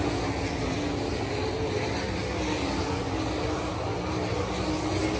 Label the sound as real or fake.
real